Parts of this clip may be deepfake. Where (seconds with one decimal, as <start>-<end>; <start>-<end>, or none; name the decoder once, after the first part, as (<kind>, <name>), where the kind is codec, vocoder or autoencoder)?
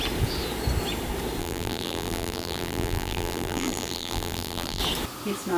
1.4-4.8 (vocoder, BigVGAN v2)